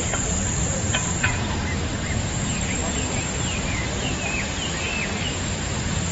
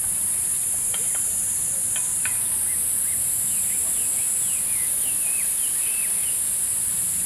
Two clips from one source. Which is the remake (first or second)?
first